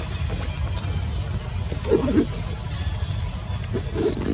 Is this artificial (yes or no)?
no